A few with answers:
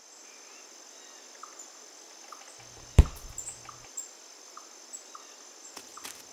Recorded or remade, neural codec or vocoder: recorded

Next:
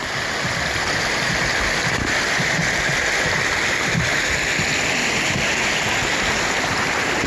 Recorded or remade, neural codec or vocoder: recorded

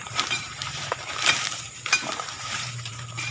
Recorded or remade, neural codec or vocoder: remade, vocoder, BigVGAN v2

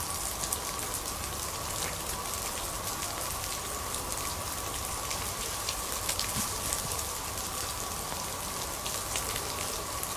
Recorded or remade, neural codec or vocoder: recorded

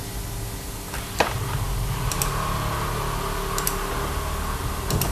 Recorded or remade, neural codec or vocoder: recorded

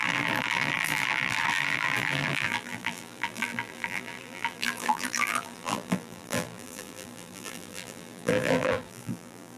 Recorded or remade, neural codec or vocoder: remade, vocoder, BigVGAN v2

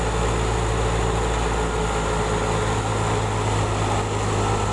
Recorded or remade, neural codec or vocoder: recorded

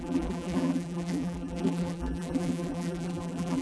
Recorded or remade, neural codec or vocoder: remade, vocoder, BigVGAN v2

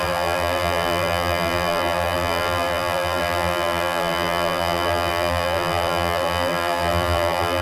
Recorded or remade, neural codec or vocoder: remade, vocoder, BigVGAN v2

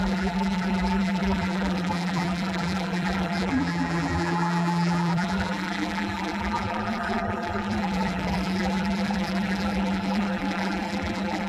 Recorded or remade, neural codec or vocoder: remade, vocoder, BigVGAN v2